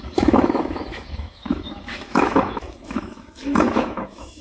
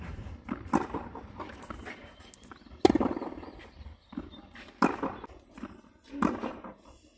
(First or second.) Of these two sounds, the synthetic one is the first